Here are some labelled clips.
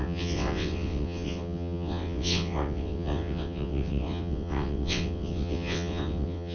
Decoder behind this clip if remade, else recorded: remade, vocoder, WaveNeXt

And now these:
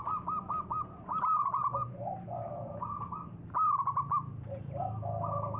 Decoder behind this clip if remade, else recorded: recorded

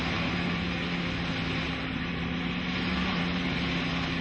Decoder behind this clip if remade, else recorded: recorded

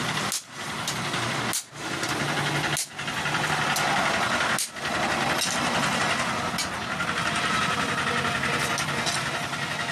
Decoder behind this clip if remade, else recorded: recorded